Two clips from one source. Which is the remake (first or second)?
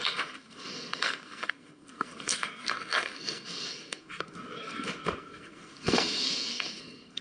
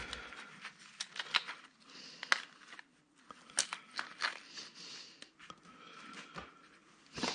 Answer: first